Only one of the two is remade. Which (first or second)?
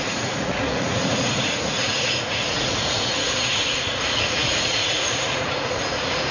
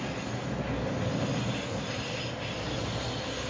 first